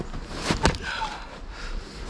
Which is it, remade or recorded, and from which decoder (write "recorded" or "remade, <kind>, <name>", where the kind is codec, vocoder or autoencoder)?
recorded